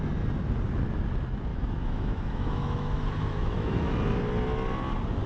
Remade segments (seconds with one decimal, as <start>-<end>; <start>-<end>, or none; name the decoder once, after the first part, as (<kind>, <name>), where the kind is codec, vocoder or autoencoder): 1.5-3.9 (autoencoder, DAC-VAE)

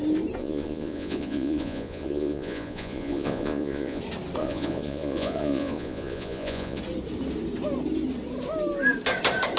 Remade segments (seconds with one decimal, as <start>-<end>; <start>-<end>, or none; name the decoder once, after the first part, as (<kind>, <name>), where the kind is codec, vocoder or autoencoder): 0.4-4.0 (vocoder, Vocos); 4.4-6.8

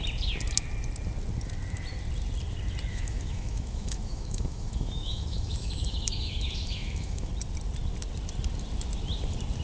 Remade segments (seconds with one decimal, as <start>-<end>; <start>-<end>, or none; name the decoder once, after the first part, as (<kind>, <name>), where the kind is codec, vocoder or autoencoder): 2.9-7.3 (autoencoder, DAC-VAE)